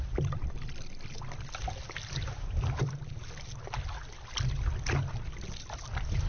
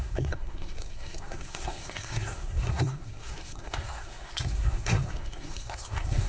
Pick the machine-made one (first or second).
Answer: second